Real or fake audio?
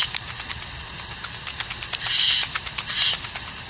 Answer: real